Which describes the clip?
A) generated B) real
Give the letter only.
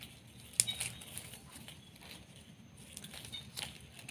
B